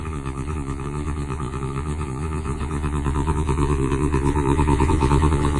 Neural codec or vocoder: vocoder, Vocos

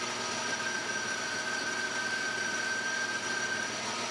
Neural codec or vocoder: none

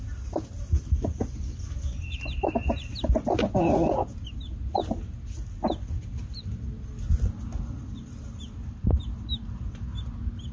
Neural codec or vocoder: none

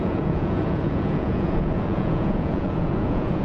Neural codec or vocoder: vocoder, Vocos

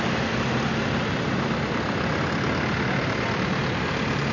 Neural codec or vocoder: none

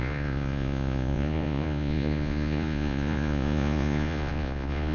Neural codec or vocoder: vocoder, Vocos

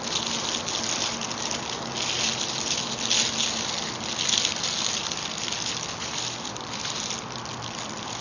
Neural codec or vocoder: none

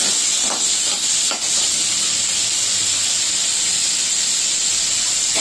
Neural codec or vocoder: none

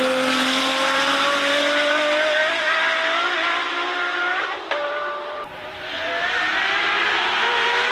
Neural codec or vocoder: vocoder, BigVGAN v2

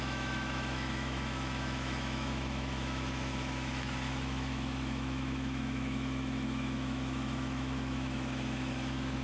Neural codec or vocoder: autoencoder, DAC-VAE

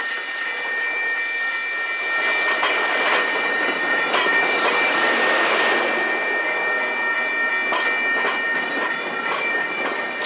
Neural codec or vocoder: none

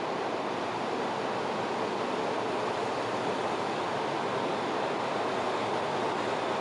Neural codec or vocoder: none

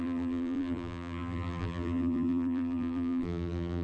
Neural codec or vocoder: vocoder, BigVGAN v2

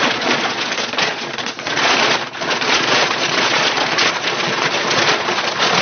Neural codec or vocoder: vocoder, Vocos